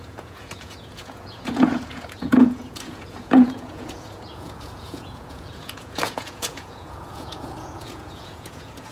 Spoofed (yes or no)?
yes